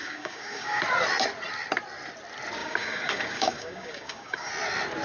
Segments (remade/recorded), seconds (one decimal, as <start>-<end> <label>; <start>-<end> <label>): 0.0-0.8 remade; 0.8-2.6 recorded; 2.6-4.5 remade; 4.5-5.0 recorded